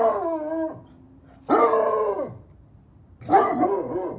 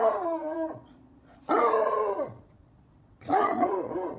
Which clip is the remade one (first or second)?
second